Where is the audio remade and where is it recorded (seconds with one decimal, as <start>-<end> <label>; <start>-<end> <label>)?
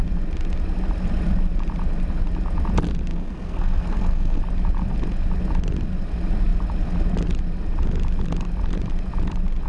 0.0-3.1 recorded; 3.1-4.4 remade; 4.4-9.7 recorded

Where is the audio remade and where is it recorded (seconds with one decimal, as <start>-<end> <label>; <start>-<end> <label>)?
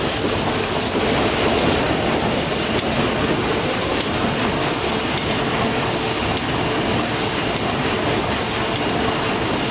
0.0-9.7 recorded